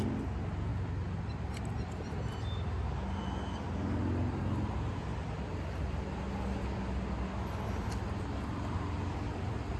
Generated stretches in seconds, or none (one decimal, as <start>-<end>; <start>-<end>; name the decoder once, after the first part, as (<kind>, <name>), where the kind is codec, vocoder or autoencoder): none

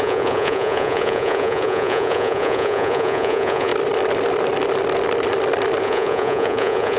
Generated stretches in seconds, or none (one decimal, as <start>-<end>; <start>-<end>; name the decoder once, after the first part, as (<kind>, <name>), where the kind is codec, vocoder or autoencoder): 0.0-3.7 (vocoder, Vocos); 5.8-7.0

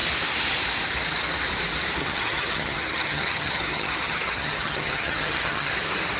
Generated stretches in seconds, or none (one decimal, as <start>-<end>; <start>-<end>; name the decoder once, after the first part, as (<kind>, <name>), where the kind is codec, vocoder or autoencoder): 2.0-5.7 (vocoder, HiFi-GAN)

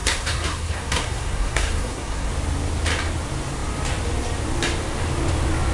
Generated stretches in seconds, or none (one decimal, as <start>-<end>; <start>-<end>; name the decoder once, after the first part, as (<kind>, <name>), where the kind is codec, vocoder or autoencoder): 0.0-2.3 (codec, SNAC)

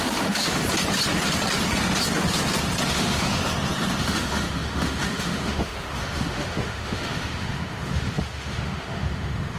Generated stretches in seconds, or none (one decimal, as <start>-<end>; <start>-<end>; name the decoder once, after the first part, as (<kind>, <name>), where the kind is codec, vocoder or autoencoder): 0.0-0.6 (autoencoder, DAC-VAE); 2.9-3.4; 4.0-9.6